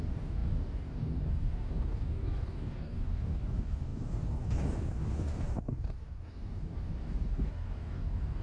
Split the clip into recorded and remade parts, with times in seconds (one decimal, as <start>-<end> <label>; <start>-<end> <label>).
0.0-8.4 remade

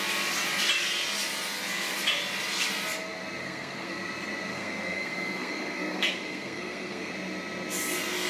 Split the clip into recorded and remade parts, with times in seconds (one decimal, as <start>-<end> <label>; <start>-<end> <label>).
0.0-3.4 recorded; 3.4-4.0 remade; 4.0-4.5 recorded; 4.5-7.1 remade; 7.1-8.3 recorded

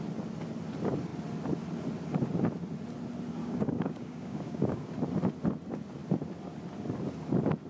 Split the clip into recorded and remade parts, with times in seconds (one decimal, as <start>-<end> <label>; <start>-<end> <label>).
0.0-3.4 recorded; 3.4-4.9 remade; 4.9-7.7 recorded

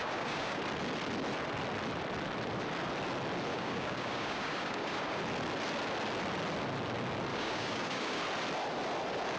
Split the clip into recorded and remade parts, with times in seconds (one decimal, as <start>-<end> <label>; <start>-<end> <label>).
0.0-0.6 remade; 0.6-3.5 recorded; 3.5-5.2 remade; 5.2-7.3 recorded; 7.3-8.2 remade; 8.2-9.4 recorded

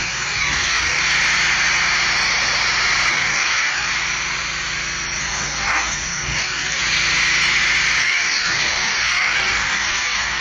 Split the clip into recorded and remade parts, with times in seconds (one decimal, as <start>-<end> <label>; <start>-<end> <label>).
0.0-1.0 remade; 1.0-3.1 recorded; 3.1-3.9 remade; 3.9-5.2 recorded; 5.2-6.8 remade; 6.8-8.0 recorded; 8.0-10.4 remade